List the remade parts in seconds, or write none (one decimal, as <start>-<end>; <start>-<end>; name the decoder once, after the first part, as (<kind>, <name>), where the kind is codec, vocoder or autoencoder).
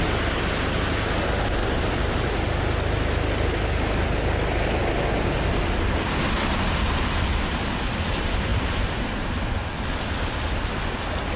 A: 1.6-2.6 (vocoder, BigVGAN v2); 8.5-9.3